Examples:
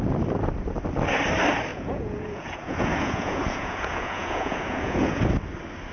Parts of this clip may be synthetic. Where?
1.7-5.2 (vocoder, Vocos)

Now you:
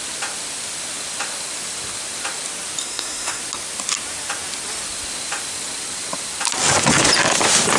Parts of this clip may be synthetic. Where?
2.8-3.4 (codec, SNAC)

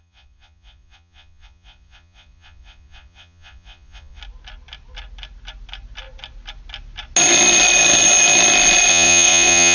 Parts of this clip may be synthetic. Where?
0.0-4.2 (vocoder, Vocos); 8.9-9.7

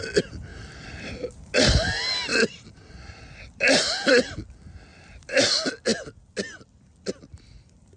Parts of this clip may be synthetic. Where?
0.5-1.1 (vocoder, BigVGAN v2); 2.3-4.3; 4.9-5.4

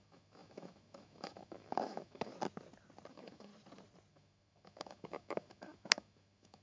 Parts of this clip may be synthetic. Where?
0.0-2.3 (autoencoder, DAC-VAE); 3.1-3.5; 4.1-6.6